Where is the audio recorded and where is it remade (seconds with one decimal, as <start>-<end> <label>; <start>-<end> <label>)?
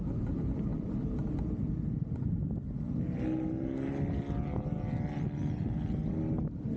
0.0-6.8 recorded